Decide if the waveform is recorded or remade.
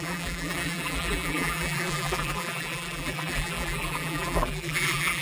remade